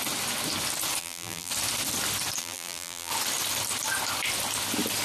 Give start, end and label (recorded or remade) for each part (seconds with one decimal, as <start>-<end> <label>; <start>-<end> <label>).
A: 0.0-1.0 recorded; 1.0-1.5 remade; 1.5-2.4 recorded; 2.4-3.1 remade; 3.1-5.0 recorded